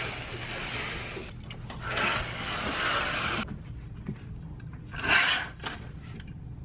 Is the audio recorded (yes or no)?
yes